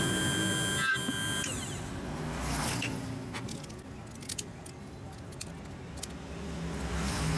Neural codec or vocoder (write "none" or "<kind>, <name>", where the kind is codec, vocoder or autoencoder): none